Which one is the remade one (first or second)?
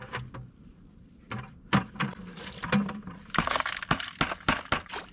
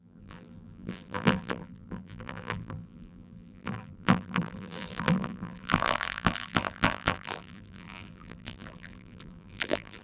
second